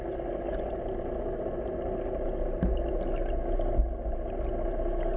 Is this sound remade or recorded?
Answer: recorded